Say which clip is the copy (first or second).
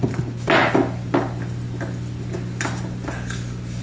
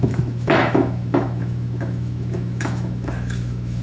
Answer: second